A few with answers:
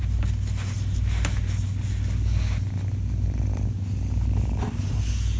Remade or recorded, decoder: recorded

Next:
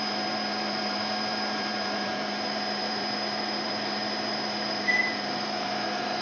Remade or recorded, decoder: remade, vocoder, BigVGAN v2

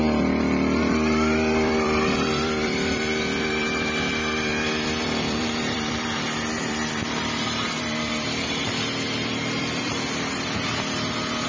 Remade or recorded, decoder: remade, vocoder, BigVGAN v2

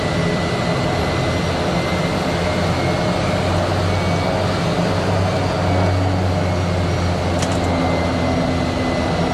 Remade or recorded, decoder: recorded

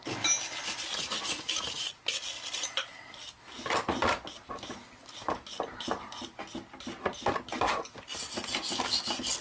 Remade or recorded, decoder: recorded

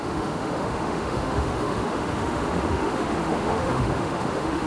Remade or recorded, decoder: remade, autoencoder, DAC-VAE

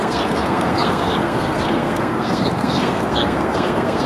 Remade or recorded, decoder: remade, codec, SNAC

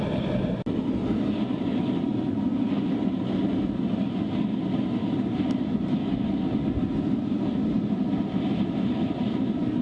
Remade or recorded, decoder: recorded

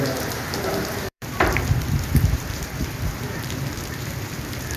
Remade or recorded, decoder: remade, vocoder, BigVGAN v2